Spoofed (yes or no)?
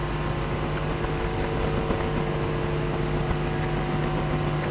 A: no